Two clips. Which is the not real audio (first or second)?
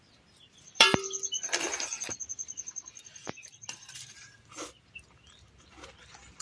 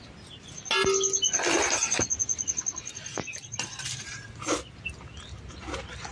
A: first